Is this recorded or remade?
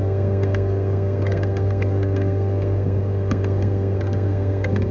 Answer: remade